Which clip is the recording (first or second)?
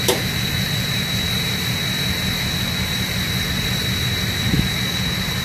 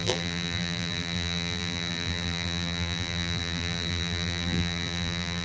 first